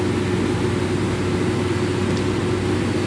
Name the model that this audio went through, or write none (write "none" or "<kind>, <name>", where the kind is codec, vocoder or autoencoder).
none